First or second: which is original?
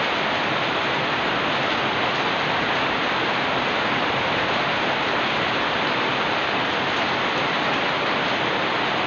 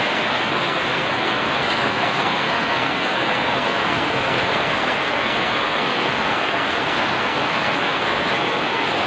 first